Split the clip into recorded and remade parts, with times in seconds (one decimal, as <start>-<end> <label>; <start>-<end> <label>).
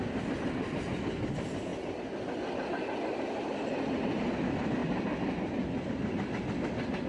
0.0-7.1 recorded